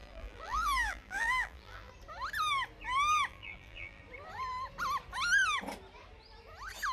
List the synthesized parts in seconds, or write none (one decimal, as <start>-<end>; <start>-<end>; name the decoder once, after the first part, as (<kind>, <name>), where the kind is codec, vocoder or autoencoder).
0.0-1.9 (vocoder, BigVGAN v2); 3.3-4.0